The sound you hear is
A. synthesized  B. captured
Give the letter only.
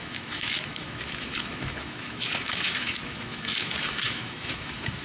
A